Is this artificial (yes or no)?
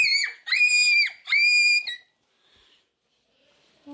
no